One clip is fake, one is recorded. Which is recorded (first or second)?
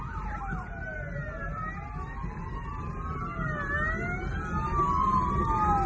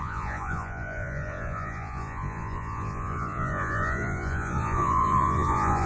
first